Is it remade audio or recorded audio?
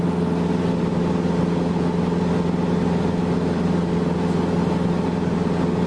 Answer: recorded